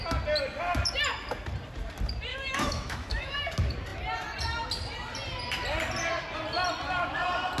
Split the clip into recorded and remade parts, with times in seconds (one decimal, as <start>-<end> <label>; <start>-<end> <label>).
0.0-2.3 recorded; 2.3-3.4 remade; 3.4-7.6 recorded